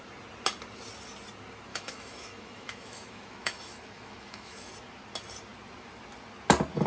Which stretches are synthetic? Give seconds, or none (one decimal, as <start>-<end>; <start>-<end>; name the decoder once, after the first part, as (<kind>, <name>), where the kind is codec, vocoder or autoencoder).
1.7-4.7 (autoencoder, DAC-VAE)